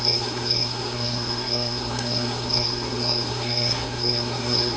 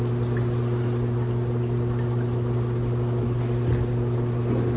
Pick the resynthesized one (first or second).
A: first